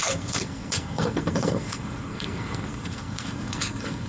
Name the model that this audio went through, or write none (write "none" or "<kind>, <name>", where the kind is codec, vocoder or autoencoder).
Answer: codec, SNAC